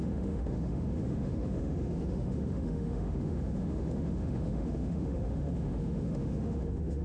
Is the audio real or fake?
fake